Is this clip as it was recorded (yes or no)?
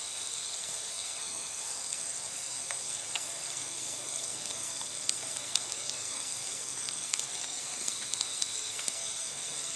no